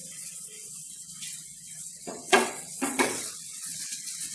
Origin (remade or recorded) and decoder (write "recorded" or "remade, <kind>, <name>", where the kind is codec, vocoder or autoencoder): remade, vocoder, WaveNeXt